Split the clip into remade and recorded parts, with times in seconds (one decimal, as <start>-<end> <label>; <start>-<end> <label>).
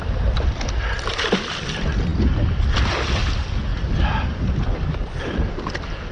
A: 0.0-6.1 recorded